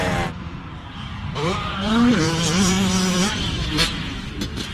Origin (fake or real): fake